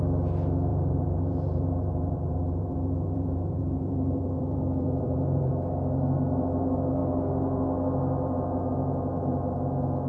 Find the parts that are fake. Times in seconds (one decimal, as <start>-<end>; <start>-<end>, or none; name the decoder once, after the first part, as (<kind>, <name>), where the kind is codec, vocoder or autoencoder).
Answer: 0.7-5.5 (vocoder, BigVGAN v2)